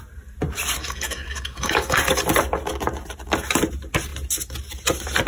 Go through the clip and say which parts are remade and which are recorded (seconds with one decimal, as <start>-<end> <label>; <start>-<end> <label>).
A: 0.0-0.8 recorded; 0.8-2.0 remade; 2.0-5.3 recorded